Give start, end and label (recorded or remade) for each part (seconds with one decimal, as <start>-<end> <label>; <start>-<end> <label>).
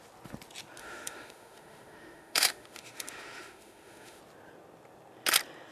0.0-0.8 recorded; 0.8-4.2 remade; 4.2-5.7 recorded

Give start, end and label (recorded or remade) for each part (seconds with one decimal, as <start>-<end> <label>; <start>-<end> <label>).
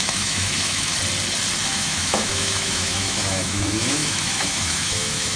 0.0-0.9 remade; 0.9-1.7 recorded; 1.7-5.4 remade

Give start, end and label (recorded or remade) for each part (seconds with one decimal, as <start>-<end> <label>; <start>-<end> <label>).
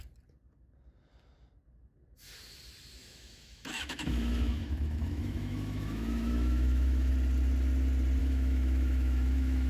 0.0-3.0 recorded; 3.0-7.1 remade; 7.1-8.2 recorded; 8.2-9.7 remade